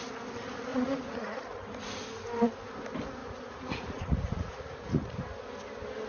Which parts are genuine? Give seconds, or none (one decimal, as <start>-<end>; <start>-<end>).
0.0-0.7; 1.4-3.2; 5.2-6.1